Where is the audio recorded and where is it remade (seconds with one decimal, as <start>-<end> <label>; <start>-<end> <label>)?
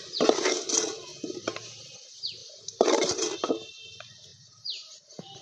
0.0-1.1 recorded; 1.1-1.8 remade; 1.8-2.4 recorded; 2.4-3.5 remade; 3.5-4.3 recorded; 4.3-5.4 remade